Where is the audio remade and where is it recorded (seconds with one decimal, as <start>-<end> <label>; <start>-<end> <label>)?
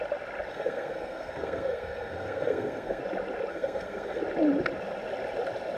0.0-0.5 recorded; 0.5-3.0 remade; 3.0-3.5 recorded; 3.5-4.2 remade; 4.2-5.8 recorded